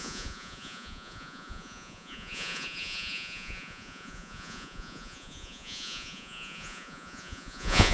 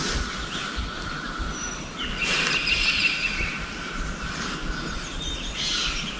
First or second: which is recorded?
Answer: second